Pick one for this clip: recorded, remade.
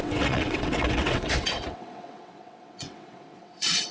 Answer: remade